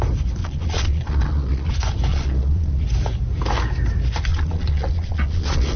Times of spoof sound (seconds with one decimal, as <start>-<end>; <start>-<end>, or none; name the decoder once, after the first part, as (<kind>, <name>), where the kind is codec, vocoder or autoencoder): 0.4-1.7 (vocoder, Vocos); 2.1-2.8; 4.3-5.8